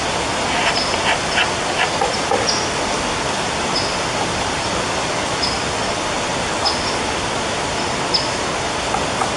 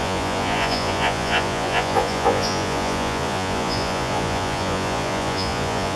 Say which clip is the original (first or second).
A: first